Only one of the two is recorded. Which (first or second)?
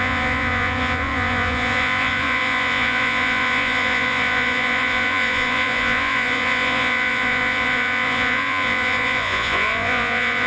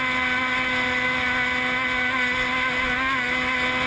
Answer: second